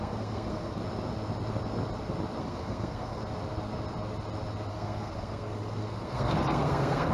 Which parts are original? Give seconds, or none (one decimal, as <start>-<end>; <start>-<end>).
0.8-2.4; 3.2-4.7